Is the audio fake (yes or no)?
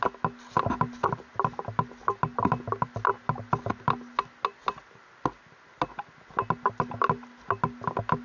no